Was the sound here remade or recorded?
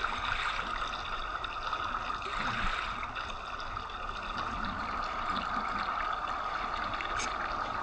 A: recorded